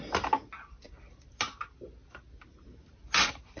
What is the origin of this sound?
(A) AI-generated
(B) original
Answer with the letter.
B